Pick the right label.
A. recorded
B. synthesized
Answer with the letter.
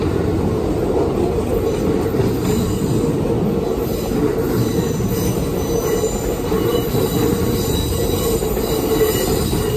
A